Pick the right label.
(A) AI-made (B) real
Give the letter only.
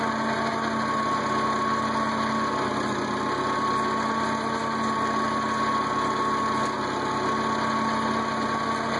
B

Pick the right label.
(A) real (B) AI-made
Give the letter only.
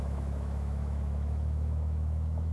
B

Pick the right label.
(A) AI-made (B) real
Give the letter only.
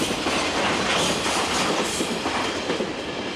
B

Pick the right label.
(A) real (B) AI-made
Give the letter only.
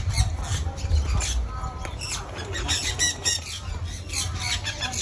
A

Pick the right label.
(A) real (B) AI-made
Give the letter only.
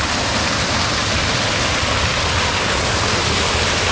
A